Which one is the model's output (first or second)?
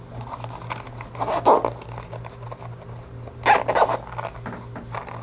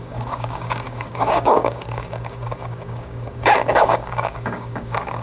second